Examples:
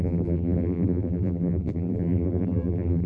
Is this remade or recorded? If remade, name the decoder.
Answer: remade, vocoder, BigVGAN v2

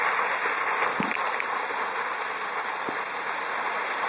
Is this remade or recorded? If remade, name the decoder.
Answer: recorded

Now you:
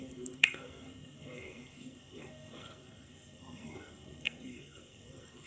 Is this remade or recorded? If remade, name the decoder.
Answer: remade, codec, SNAC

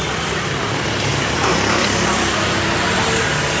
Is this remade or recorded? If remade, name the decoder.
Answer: recorded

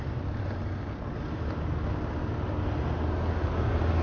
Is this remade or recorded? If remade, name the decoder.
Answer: recorded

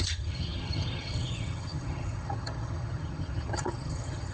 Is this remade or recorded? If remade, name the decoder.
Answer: remade, vocoder, HiFi-GAN